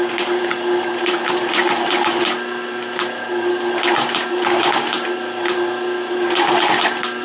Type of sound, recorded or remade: recorded